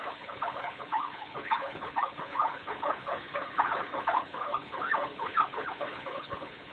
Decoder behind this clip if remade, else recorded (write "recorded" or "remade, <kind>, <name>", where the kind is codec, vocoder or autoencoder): remade, codec, HILCodec